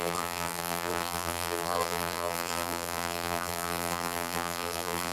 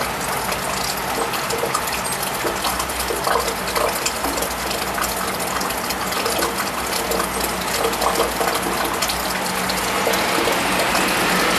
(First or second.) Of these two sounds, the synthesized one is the first